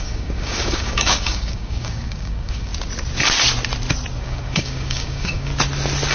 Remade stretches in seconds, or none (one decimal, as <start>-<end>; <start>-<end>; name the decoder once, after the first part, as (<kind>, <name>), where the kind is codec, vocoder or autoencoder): 0.0-2.7 (codec, DAC); 4.2-5.5